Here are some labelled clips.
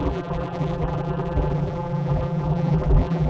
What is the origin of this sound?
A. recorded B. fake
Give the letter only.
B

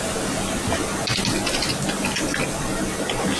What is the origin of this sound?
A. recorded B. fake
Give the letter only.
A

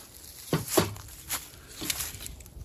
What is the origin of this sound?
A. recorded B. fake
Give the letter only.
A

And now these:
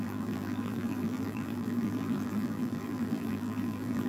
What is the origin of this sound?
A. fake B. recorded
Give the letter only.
A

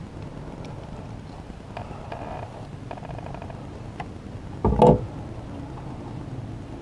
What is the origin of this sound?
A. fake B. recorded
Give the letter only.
B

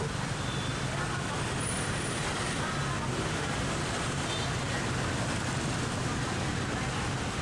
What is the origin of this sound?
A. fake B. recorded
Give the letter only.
B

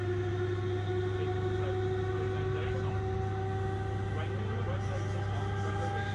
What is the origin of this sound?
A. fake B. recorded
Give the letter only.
B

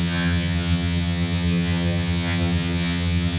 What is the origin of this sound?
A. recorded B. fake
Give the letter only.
B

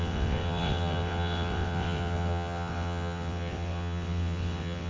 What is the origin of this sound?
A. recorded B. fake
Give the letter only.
B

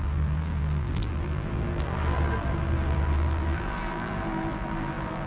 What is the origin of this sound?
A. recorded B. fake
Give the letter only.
B